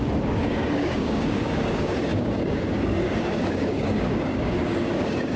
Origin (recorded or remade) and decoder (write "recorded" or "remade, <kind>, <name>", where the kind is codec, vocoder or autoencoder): remade, codec, DAC